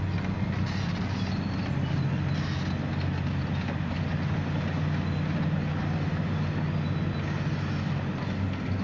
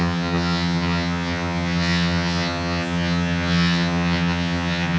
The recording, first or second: first